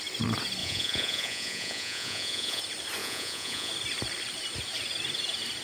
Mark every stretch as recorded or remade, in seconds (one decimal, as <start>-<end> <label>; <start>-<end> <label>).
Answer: 0.0-0.6 recorded; 0.6-2.6 remade; 2.6-3.0 recorded; 3.0-3.7 remade; 3.7-5.6 recorded